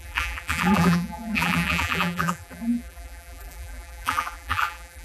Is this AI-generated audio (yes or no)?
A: yes